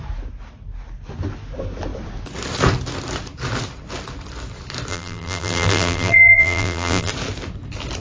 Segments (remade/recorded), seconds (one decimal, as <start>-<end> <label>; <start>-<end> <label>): 0.0-4.9 recorded; 4.9-7.1 remade; 7.1-8.0 recorded